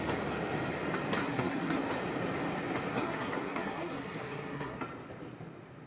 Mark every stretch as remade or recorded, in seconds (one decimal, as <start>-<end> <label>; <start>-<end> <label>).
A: 0.0-1.2 recorded; 1.2-1.8 remade; 1.8-2.9 recorded; 2.9-4.8 remade; 4.8-5.9 recorded